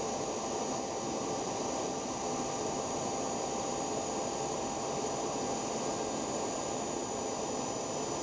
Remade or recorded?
recorded